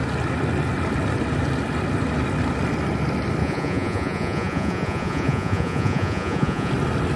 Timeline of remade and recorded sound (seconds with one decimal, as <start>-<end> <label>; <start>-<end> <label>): 0.0-3.4 recorded; 3.4-6.7 remade; 6.7-7.2 recorded